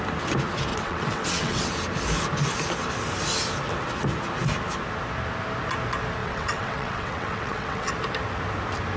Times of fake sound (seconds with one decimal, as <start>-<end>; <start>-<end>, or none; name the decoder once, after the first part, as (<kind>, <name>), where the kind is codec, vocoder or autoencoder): 0.7-1.7 (vocoder, WaveNeXt); 6.2-7.9